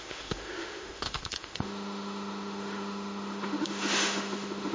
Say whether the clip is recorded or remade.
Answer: remade